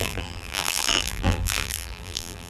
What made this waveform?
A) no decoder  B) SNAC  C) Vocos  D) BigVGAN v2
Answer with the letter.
D